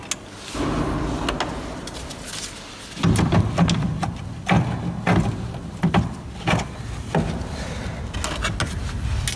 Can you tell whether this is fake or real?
real